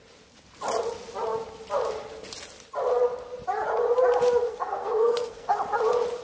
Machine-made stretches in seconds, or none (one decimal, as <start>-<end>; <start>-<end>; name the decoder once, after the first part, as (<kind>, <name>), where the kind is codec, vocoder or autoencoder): 4.5-5.6 (codec, SNAC)